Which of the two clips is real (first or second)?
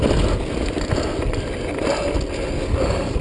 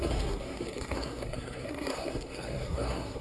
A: first